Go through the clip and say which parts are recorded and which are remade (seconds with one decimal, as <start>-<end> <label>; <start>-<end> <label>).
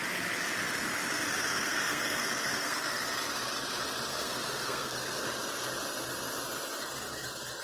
0.0-1.6 recorded; 1.6-3.1 remade; 3.1-4.1 recorded; 4.1-5.2 remade; 5.2-7.6 recorded